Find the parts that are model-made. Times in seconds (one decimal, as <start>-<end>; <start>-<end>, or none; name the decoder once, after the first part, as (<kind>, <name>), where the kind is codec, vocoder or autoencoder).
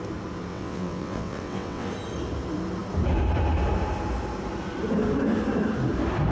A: 0.5-1.9 (vocoder, WaveNeXt)